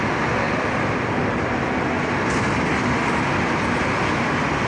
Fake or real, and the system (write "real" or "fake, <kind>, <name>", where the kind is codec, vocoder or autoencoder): real